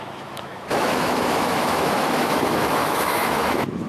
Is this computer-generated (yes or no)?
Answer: yes